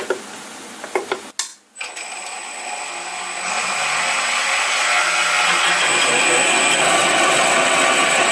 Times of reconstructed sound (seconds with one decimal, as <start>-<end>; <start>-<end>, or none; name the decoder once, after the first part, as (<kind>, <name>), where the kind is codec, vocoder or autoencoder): 7.0-8.3 (vocoder, WaveNeXt)